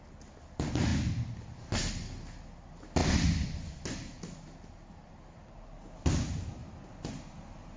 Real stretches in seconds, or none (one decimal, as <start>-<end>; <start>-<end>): 0.0-7.8